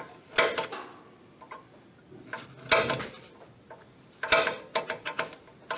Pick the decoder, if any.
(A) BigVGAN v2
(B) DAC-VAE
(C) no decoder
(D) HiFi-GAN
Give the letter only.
C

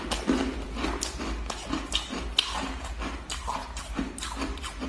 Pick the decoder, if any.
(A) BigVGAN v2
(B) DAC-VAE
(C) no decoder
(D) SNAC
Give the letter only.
C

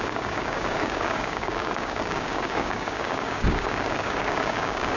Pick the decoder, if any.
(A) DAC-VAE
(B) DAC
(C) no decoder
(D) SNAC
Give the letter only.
B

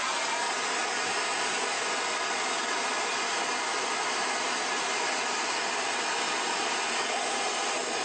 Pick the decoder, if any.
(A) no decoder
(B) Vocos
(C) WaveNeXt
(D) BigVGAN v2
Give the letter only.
A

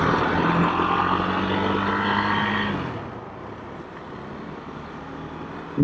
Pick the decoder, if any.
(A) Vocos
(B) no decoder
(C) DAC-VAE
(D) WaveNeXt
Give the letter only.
B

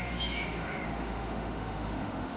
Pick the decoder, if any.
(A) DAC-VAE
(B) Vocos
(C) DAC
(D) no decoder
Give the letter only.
A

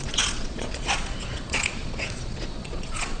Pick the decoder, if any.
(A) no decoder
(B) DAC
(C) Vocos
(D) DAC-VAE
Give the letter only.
C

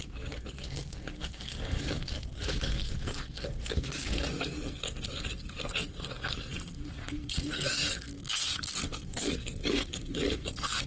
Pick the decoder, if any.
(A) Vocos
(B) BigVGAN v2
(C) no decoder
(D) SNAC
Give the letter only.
D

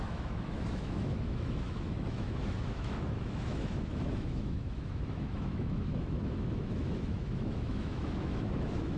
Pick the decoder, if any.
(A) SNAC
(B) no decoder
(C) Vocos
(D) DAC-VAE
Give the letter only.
D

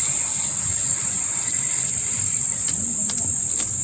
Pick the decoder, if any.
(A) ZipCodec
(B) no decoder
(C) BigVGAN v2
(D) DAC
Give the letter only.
B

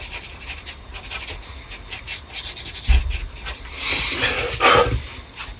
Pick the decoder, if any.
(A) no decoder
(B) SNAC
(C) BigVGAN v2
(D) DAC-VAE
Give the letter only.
A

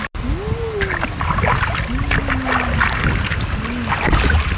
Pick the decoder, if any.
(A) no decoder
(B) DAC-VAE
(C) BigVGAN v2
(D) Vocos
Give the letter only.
A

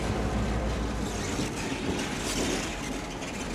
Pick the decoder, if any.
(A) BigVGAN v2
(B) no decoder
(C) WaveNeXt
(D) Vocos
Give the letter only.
B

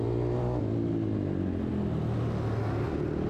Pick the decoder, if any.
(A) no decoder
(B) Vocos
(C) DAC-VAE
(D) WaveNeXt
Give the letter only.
A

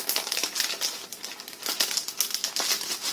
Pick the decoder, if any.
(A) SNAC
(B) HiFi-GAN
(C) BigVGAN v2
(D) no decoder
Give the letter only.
D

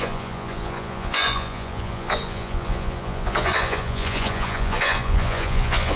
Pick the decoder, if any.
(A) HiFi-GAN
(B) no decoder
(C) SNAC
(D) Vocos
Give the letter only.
D